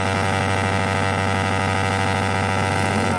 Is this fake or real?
real